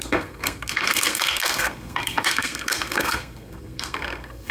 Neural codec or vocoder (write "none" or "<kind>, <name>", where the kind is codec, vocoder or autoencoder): codec, SNAC